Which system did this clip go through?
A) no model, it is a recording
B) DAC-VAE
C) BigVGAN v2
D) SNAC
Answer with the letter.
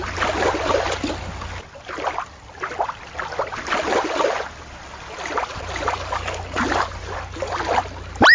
A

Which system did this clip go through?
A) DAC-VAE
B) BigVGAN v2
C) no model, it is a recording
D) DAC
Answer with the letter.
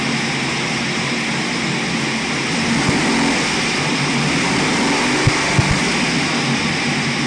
C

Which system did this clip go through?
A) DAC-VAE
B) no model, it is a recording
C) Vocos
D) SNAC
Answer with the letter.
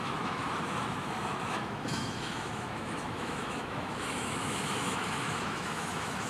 A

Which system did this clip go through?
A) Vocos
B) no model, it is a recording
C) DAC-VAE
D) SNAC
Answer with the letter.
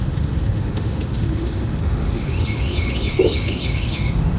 C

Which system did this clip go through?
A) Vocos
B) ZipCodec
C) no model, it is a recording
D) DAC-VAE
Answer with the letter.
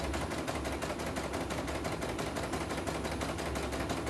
C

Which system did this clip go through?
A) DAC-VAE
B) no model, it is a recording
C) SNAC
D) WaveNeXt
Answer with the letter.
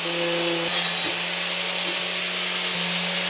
B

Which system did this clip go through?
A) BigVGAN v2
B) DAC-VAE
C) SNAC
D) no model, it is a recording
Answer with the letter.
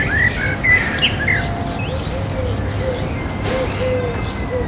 D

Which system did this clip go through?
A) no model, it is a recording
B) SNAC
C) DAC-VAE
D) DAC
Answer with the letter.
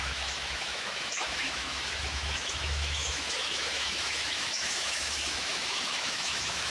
C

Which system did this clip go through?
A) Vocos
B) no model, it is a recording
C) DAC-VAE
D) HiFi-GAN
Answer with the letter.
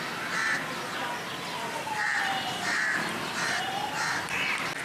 B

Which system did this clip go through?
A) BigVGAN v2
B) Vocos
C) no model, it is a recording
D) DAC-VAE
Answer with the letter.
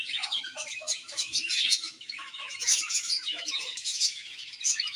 D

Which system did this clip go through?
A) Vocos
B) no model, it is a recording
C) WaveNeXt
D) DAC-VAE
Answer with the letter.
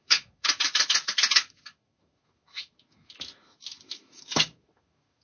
D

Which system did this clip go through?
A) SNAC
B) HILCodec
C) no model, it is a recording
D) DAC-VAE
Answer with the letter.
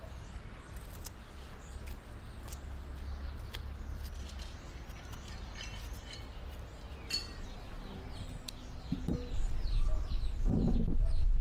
C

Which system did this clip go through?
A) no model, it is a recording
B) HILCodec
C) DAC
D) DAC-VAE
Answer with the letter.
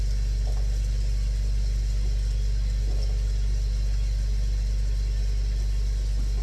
A